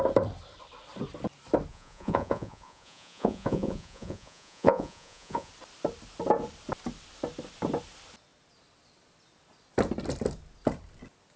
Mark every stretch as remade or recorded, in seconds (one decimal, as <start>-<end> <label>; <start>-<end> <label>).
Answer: 0.0-1.7 recorded; 1.7-5.5 remade; 5.5-11.4 recorded